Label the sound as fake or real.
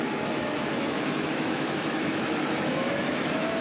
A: fake